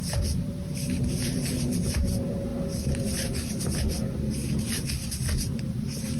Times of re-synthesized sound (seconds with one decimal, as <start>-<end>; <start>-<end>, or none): 0.0-2.5; 4.7-6.2